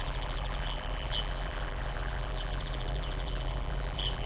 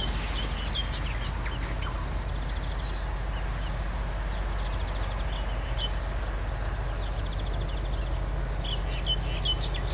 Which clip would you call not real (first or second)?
first